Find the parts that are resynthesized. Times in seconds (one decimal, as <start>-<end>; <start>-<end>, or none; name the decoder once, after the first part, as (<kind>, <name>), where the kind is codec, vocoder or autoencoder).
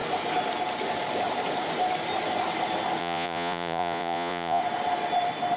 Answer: 3.0-4.6 (vocoder, Vocos)